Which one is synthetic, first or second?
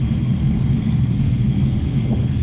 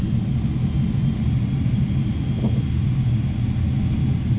first